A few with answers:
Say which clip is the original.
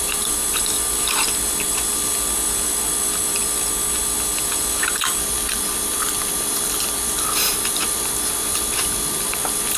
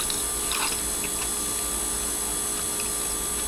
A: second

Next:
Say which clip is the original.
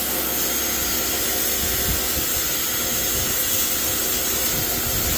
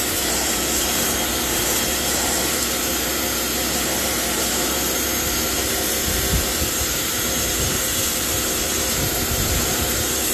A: first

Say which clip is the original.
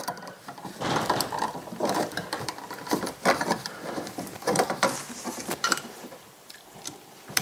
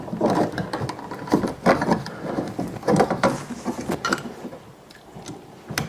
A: second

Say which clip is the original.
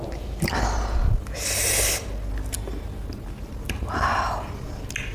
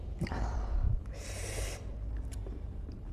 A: first